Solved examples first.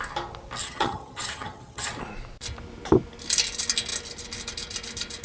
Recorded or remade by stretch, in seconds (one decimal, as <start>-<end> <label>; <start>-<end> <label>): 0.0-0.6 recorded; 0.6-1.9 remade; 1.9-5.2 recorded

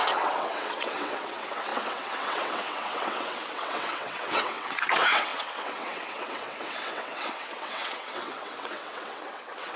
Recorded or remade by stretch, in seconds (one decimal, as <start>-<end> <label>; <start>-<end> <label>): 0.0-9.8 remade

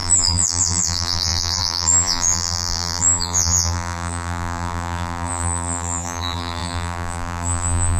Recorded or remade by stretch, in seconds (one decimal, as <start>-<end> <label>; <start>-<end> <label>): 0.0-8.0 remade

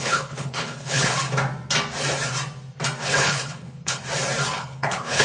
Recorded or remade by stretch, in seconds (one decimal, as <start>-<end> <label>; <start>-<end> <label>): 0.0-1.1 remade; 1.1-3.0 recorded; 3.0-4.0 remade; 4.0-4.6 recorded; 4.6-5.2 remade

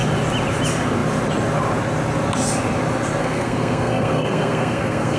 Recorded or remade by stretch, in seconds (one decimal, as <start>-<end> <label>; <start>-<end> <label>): 0.0-3.2 recorded; 3.2-5.2 remade